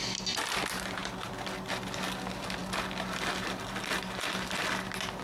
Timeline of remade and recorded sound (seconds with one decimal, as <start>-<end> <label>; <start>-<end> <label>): 0.0-5.2 recorded